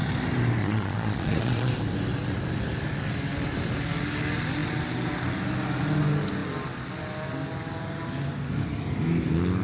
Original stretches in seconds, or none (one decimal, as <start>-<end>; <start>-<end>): 0.0-0.6; 1.7-9.6